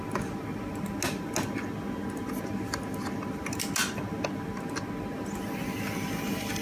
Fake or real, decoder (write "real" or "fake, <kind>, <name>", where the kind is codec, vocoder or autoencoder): real